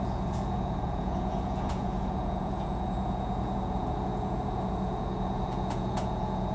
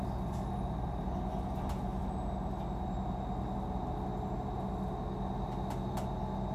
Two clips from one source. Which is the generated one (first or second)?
first